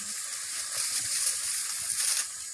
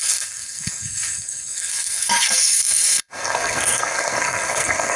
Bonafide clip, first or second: first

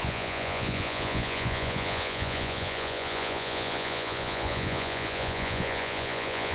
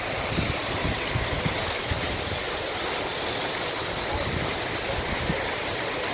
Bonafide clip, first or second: second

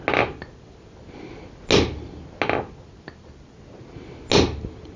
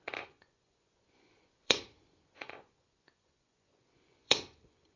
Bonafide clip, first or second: first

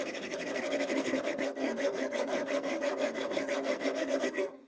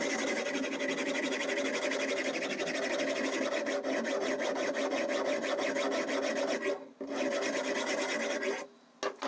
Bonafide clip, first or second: second